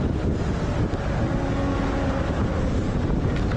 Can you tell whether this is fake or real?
real